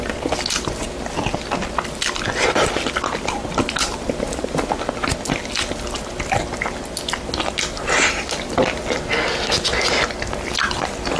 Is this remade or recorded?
recorded